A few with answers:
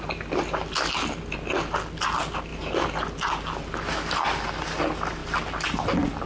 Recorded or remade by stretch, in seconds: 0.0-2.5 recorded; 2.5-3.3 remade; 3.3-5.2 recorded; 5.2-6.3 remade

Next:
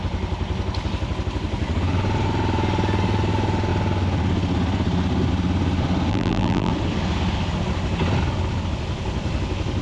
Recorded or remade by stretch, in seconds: 0.0-6.1 recorded; 6.1-6.7 remade; 6.7-9.8 recorded

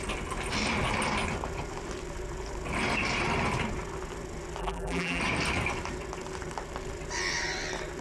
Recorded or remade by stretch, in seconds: 0.0-4.6 recorded; 4.6-5.2 remade; 5.2-8.0 recorded

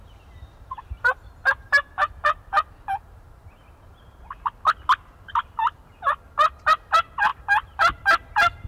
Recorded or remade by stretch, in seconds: 0.0-4.0 remade; 4.0-7.3 recorded; 7.3-8.0 remade; 8.0-8.7 recorded

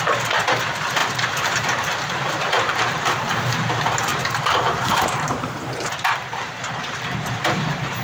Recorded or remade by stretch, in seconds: 0.0-8.0 remade

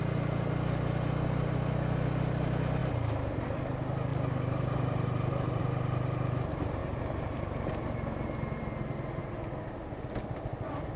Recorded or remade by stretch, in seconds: 0.0-4.1 recorded; 4.1-5.6 remade; 5.6-9.2 recorded; 9.2-9.8 remade; 9.8-11.0 recorded

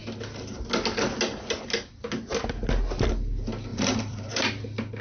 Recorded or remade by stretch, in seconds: 0.0-3.7 recorded; 3.7-4.3 remade; 4.3-5.0 recorded